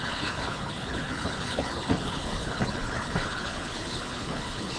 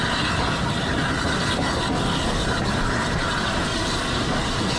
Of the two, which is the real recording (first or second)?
second